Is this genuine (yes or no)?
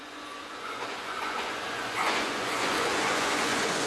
no